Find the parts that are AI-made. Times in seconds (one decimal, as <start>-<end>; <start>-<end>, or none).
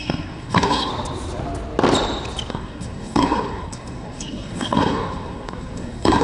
0.0-0.9; 2.5-6.2